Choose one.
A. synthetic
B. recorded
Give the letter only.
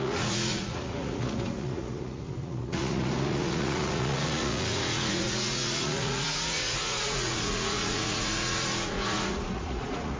A